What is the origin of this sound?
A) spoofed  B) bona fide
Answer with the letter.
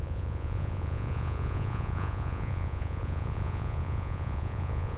A